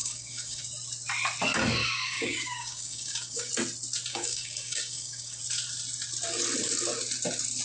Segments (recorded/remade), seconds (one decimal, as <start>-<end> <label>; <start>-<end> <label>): 0.0-0.6 remade; 0.6-1.8 recorded; 1.8-3.5 remade; 3.5-4.1 recorded; 4.1-5.4 remade; 5.4-7.6 recorded